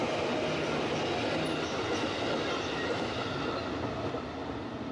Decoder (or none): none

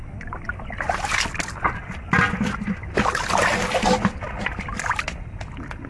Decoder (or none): none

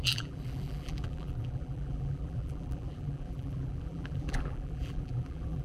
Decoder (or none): vocoder, BigVGAN v2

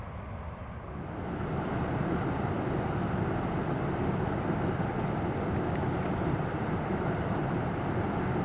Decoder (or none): none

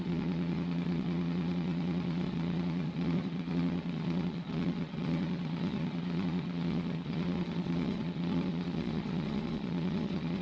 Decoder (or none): vocoder, Vocos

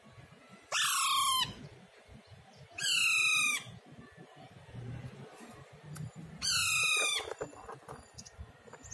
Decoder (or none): none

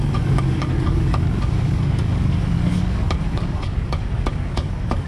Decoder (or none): codec, DAC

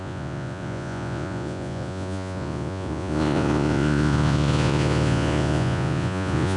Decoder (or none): vocoder, Vocos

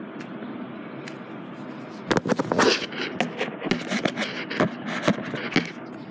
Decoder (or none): none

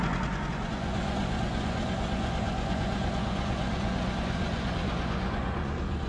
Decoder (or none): vocoder, Vocos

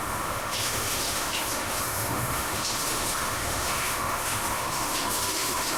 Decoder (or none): autoencoder, DAC-VAE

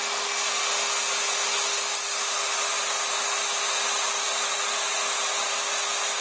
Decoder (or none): none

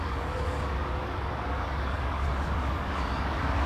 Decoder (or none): codec, DAC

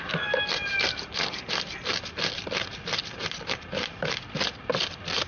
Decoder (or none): none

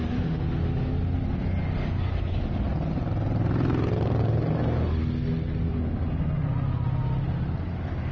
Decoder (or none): none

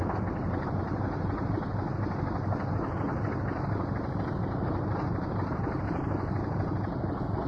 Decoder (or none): none